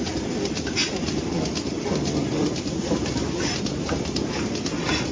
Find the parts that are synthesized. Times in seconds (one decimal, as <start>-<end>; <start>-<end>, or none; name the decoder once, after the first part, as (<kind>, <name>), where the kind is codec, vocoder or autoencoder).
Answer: 0.8-1.4 (vocoder, BigVGAN v2); 2.2-3.6